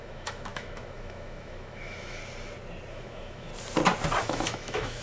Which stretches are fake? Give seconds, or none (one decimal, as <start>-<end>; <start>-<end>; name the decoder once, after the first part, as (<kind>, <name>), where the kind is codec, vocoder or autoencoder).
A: 0.0-2.2 (autoencoder, DAC-VAE); 2.9-3.5; 4.2-5.0